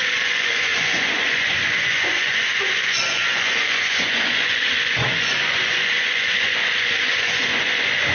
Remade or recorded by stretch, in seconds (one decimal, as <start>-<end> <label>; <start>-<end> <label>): 0.0-8.1 remade